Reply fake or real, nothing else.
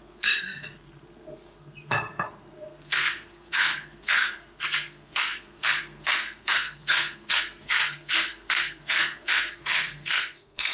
fake